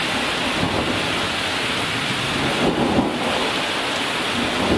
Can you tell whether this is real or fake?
real